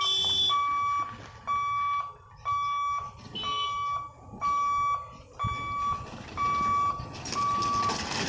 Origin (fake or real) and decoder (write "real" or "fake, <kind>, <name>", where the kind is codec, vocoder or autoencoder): real